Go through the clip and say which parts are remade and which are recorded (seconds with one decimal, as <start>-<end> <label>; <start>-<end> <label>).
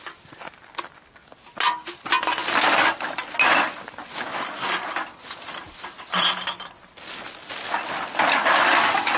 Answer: 0.0-9.2 recorded